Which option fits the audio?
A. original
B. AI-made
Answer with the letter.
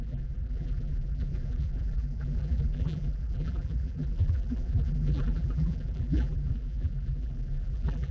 B